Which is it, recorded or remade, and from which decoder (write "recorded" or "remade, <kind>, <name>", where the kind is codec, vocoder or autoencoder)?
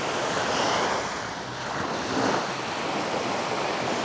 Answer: recorded